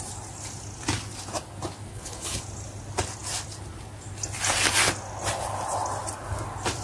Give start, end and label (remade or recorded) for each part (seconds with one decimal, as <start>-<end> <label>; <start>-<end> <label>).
0.0-1.9 recorded; 1.9-2.4 remade; 2.4-6.8 recorded